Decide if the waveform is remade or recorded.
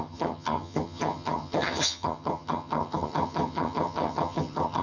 remade